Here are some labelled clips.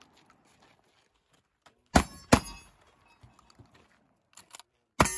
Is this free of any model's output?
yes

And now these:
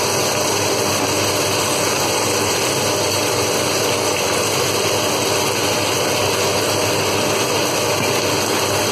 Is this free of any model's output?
yes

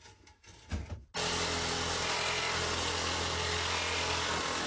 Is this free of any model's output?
yes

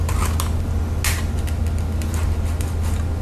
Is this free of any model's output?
yes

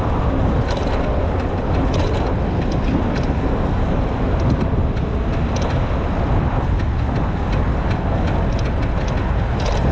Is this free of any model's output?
yes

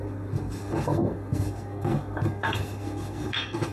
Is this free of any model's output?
no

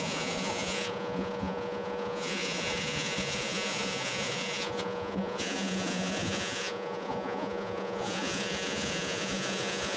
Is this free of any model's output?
no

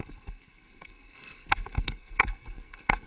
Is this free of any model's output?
no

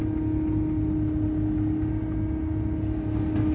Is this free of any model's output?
yes